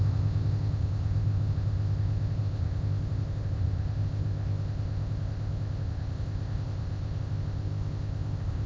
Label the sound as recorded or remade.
remade